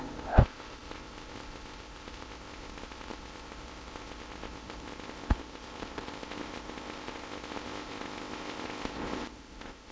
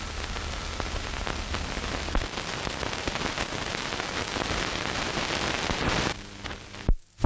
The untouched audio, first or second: second